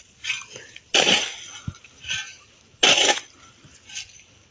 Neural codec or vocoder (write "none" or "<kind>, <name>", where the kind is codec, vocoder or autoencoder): none